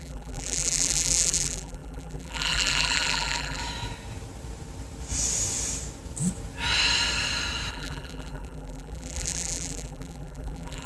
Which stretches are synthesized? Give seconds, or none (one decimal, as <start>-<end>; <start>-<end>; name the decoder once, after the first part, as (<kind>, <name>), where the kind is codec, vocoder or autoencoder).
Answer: 0.0-3.6 (vocoder, BigVGAN v2); 7.7-10.9